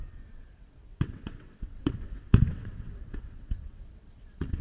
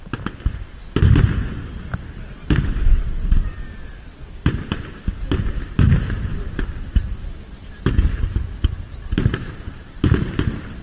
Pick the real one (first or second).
second